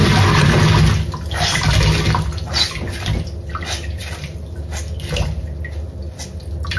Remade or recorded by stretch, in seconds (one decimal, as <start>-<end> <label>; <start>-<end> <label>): 0.0-6.8 recorded